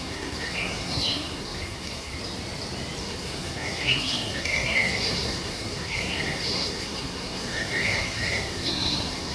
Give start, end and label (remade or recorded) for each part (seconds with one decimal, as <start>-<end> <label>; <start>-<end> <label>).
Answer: 0.0-2.2 remade; 2.2-3.0 recorded; 3.0-9.3 remade